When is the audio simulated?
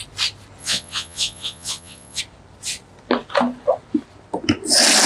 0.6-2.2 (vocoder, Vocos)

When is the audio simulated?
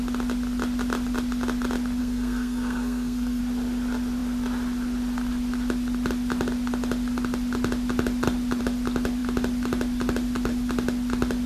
2.0-3.4 (codec, SNAC)